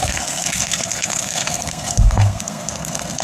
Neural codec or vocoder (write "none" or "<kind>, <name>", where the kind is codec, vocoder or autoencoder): codec, SNAC